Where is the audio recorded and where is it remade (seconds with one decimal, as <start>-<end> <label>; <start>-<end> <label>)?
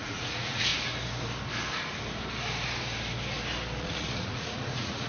0.0-0.7 remade; 0.7-3.8 recorded; 3.8-5.1 remade